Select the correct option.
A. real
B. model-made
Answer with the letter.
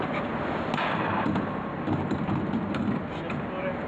A